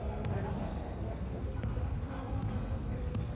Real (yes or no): no